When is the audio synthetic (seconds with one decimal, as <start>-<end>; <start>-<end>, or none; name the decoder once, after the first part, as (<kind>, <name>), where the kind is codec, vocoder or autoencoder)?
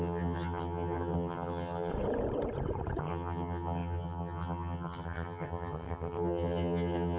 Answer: 0.0-1.9 (vocoder, HiFi-GAN); 3.0-7.2